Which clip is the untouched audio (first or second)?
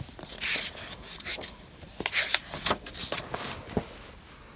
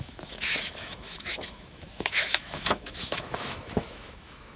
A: first